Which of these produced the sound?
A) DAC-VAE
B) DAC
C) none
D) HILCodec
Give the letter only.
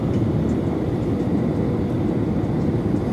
C